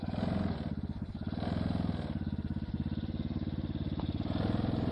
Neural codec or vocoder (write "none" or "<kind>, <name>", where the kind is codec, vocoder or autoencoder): none